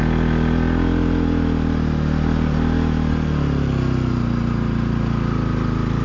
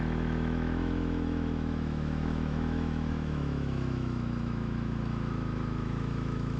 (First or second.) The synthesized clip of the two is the second